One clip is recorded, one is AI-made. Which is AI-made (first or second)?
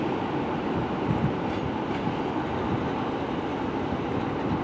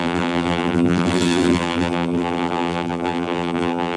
second